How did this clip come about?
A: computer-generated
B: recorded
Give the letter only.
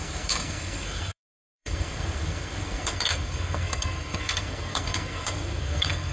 A